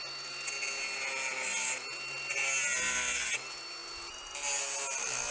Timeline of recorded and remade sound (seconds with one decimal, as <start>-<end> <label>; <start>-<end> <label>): 0.0-5.3 recorded

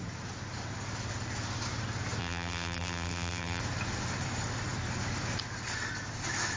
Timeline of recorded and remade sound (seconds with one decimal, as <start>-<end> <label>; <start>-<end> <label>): 0.0-2.2 recorded; 2.2-3.6 remade; 3.6-6.6 recorded

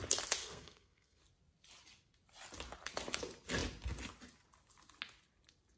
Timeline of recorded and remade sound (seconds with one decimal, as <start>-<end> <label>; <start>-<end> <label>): 0.0-0.4 recorded; 0.4-1.2 remade; 1.2-5.8 recorded